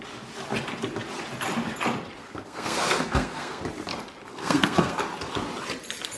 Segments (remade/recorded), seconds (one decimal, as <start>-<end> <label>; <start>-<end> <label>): 0.0-2.2 recorded; 2.2-3.6 remade; 3.6-4.3 recorded; 4.3-5.0 remade; 5.0-6.2 recorded